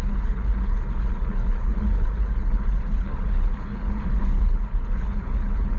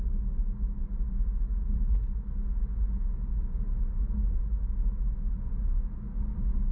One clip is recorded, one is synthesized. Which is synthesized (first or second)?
first